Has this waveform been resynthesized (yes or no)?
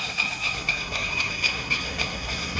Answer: yes